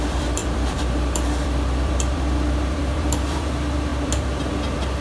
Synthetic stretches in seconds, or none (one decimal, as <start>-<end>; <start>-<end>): 0.0-5.0